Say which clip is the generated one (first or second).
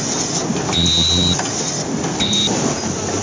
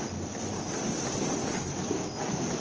second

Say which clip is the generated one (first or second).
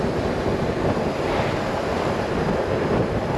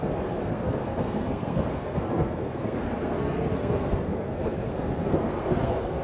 second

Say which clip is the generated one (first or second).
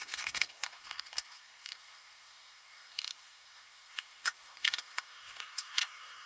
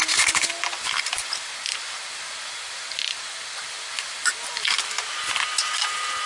first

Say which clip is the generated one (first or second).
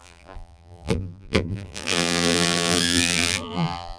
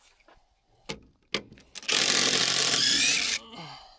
first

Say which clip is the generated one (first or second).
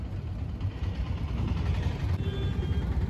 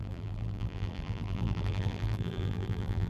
second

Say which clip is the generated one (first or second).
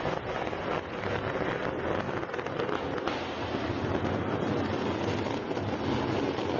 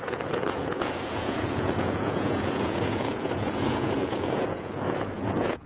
second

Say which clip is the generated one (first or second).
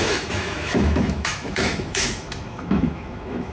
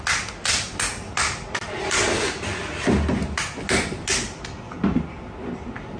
first